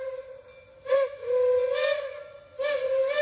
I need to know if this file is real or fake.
real